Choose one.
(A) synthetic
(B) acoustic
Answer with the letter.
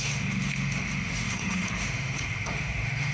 A